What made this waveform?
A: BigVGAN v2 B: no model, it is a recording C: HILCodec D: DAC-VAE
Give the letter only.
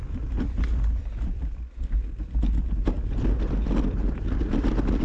B